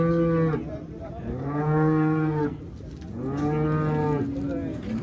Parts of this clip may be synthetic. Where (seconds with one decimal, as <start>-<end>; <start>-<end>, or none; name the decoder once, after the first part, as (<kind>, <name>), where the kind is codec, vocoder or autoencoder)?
1.3-2.6 (codec, SNAC)